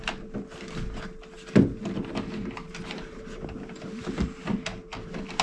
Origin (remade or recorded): recorded